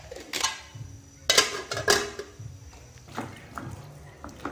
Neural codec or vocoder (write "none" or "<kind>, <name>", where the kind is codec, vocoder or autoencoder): none